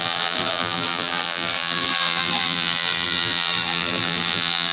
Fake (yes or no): yes